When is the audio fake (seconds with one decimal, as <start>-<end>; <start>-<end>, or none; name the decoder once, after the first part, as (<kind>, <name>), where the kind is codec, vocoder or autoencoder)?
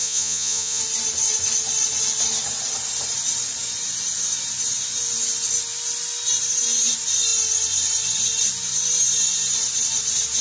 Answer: 0.0-0.8 (vocoder, Vocos)